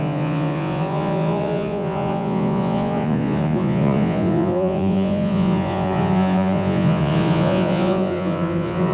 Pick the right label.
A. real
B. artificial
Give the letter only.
B